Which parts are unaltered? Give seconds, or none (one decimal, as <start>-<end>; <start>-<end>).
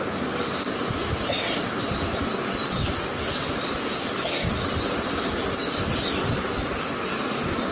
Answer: 0.0-7.7